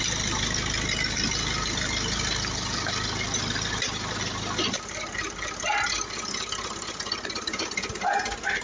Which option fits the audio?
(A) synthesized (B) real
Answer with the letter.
B